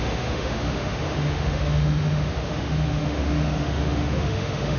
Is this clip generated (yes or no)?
yes